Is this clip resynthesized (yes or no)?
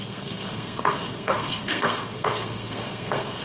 yes